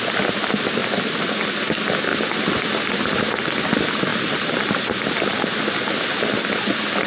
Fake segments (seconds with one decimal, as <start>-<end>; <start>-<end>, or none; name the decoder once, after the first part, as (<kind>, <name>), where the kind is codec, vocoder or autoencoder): 4.1-5.7 (vocoder, BigVGAN v2)